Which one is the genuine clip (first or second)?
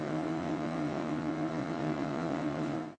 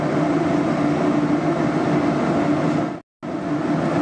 second